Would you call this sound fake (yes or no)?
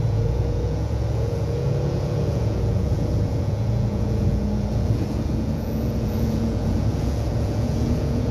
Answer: yes